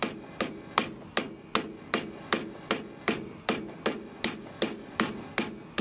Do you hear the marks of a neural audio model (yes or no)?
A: no